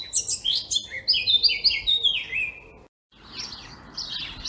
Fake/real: real